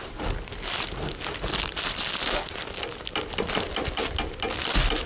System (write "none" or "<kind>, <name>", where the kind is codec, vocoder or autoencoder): none